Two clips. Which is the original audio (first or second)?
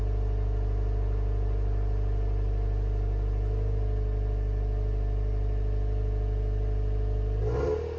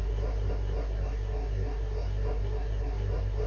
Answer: first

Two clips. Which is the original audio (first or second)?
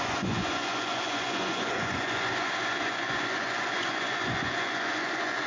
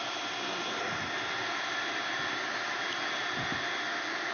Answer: second